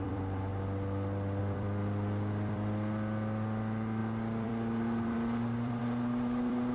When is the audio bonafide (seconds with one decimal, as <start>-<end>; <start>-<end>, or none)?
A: 0.5-1.4